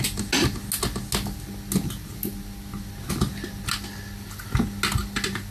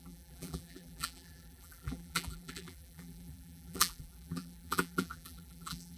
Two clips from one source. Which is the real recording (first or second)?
first